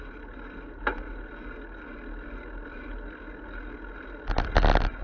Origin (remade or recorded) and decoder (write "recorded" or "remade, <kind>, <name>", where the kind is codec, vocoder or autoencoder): recorded